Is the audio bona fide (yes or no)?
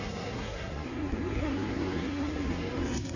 no